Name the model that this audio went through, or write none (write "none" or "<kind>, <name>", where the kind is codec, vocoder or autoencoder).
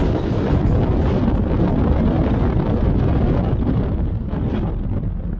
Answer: none